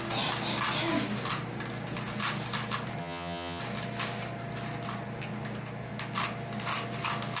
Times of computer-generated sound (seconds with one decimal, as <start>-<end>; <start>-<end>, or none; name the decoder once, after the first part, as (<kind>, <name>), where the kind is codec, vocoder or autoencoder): 3.0-3.6 (vocoder, HiFi-GAN)

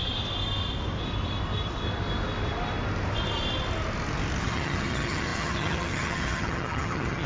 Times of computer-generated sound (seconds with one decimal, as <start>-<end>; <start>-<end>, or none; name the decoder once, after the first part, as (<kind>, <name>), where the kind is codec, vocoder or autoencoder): 4.4-7.3 (vocoder, HiFi-GAN)

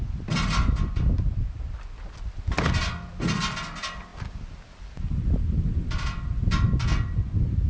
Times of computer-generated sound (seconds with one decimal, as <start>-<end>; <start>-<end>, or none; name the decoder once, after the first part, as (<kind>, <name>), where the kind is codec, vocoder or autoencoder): none

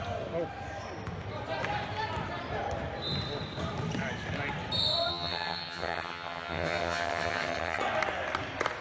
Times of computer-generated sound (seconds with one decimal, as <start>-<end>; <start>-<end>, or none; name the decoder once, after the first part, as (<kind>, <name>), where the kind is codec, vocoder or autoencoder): 5.1-7.8 (vocoder, HiFi-GAN)

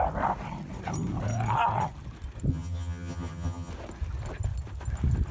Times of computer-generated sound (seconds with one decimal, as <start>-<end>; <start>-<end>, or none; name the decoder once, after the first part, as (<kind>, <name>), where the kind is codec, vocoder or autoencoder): 2.5-3.7 (vocoder, HiFi-GAN)

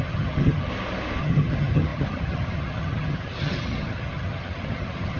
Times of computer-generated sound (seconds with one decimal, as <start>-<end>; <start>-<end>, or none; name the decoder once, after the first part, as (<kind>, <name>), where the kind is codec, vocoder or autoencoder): 0.0-0.7 (vocoder, HiFi-GAN); 1.2-5.2